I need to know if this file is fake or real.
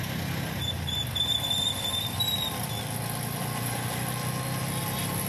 real